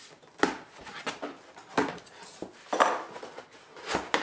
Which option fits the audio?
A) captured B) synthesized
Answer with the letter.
A